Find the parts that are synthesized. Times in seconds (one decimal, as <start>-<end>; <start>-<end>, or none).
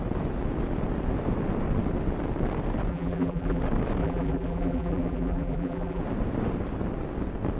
2.9-3.6; 4.0-6.0